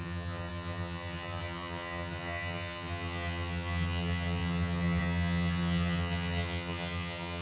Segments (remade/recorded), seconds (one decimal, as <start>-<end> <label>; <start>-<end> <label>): 0.0-7.4 remade

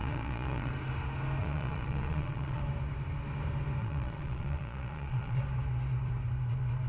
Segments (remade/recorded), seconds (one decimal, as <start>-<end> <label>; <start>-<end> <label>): 0.0-0.7 remade; 0.7-1.4 recorded; 1.4-2.6 remade; 2.6-3.8 recorded; 3.8-5.4 remade; 5.4-6.9 recorded

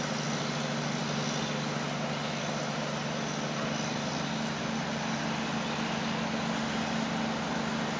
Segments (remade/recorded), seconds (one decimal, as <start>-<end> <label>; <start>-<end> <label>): 0.0-8.0 recorded

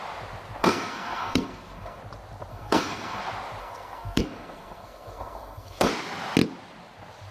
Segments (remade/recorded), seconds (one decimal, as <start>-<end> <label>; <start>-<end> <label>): 0.0-0.6 recorded; 0.6-2.0 remade; 2.0-2.5 recorded; 2.5-3.2 remade; 3.2-3.6 recorded; 3.6-5.9 remade; 5.9-7.3 recorded

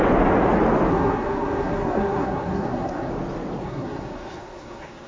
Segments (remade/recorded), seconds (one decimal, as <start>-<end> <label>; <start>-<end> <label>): 0.0-0.9 recorded; 0.9-3.1 remade; 3.1-3.6 recorded; 3.6-5.1 remade

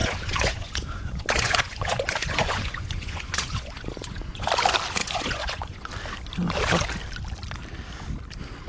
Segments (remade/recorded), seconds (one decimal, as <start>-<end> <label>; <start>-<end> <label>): 0.0-4.5 remade; 4.5-5.0 recorded; 5.0-5.9 remade; 5.9-8.7 recorded

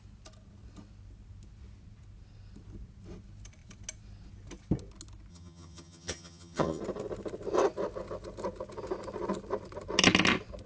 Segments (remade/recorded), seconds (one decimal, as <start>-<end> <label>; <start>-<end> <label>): 0.0-5.3 recorded; 5.3-6.8 remade; 6.8-10.7 recorded